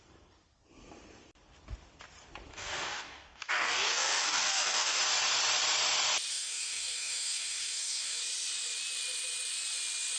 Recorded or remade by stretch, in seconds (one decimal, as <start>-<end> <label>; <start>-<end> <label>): 0.0-2.5 recorded; 2.5-5.0 remade; 5.0-6.3 recorded; 6.3-8.2 remade; 8.2-10.2 recorded